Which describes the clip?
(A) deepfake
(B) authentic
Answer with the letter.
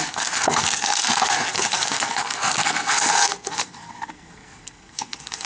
A